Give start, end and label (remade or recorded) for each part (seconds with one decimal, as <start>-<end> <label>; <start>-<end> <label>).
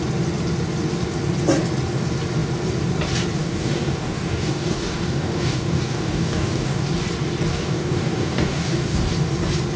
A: 0.0-3.4 recorded; 3.4-6.9 remade; 6.9-7.5 recorded; 7.5-9.0 remade; 9.0-9.8 recorded